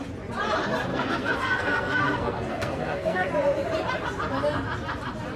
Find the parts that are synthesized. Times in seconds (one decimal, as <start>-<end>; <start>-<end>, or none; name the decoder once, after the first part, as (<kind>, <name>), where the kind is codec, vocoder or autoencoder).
0.9-3.3 (codec, SNAC)